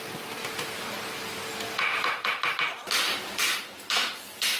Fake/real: real